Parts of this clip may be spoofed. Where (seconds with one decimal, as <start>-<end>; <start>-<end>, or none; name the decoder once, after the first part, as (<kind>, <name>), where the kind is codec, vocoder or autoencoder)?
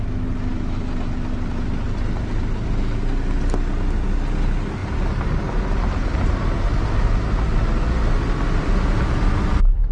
none